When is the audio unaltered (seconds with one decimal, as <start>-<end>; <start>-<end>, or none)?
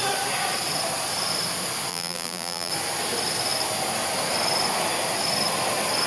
0.0-1.9; 2.7-6.1